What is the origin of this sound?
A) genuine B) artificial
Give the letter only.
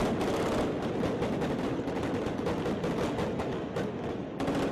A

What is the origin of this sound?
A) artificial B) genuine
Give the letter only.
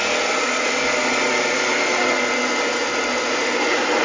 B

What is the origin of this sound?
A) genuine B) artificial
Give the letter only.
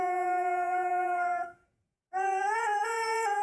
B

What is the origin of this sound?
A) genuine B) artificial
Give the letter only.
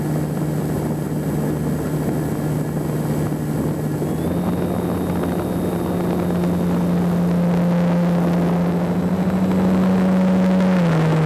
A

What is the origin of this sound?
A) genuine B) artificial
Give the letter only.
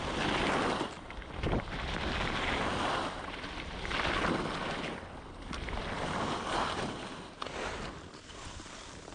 A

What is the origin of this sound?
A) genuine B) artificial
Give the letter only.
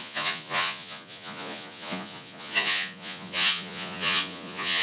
B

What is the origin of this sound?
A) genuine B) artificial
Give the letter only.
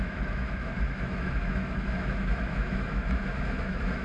B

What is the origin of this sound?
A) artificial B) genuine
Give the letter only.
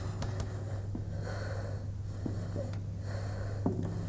B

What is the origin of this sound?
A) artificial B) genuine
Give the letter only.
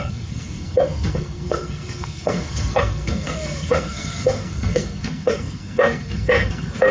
A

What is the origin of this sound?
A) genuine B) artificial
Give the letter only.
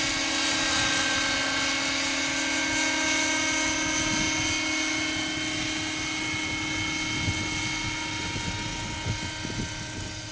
A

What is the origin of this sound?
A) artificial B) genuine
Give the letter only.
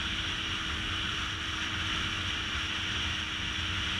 B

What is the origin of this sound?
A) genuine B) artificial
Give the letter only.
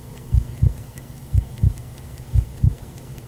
B